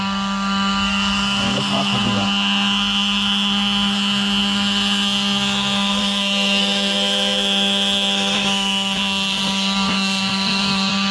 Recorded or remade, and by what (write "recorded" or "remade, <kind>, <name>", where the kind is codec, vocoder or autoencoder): remade, codec, SNAC